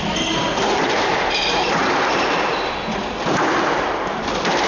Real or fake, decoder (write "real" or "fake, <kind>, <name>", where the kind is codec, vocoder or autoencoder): real